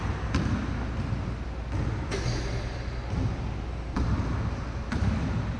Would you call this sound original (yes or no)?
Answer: yes